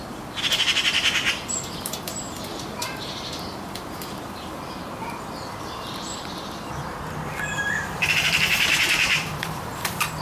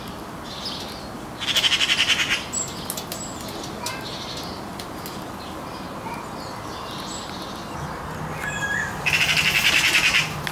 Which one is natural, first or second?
second